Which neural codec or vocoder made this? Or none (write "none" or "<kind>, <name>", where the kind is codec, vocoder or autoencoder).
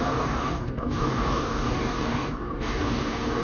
codec, DAC